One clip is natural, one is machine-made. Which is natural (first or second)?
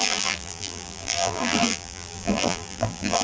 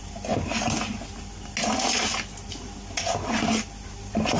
second